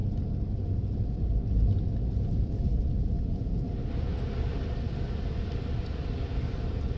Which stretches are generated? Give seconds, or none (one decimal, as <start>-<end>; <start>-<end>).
none